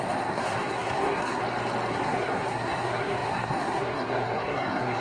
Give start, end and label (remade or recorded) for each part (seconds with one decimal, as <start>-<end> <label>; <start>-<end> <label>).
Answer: 0.0-1.4 remade; 1.4-1.9 recorded; 1.9-5.0 remade